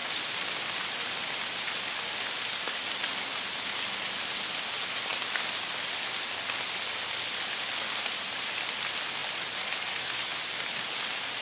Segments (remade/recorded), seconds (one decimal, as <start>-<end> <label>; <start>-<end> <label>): 0.0-2.0 remade; 2.0-5.1 recorded; 5.1-6.9 remade; 6.9-9.2 recorded; 9.2-9.9 remade; 9.9-10.3 recorded; 10.3-10.9 remade; 10.9-11.4 recorded